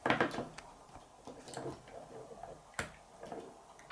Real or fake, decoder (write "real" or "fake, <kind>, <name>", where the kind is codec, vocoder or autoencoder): real